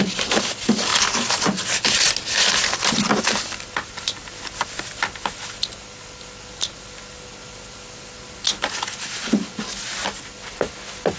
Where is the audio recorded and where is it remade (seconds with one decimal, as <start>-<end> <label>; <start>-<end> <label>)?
0.0-11.2 recorded